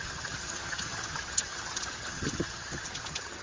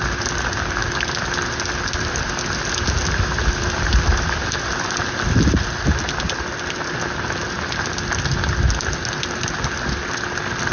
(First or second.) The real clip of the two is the second